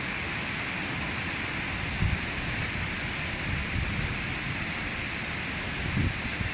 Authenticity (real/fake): fake